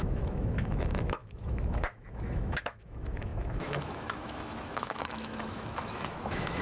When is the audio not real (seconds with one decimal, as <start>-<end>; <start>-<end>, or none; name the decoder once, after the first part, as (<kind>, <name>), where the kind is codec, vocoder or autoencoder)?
0.0-6.6 (autoencoder, DAC-VAE)